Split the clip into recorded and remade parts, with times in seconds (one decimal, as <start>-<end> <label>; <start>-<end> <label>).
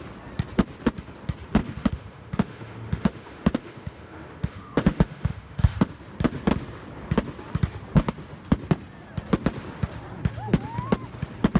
0.0-1.6 recorded; 1.6-5.9 remade; 5.9-11.6 recorded